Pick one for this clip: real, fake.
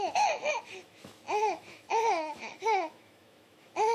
fake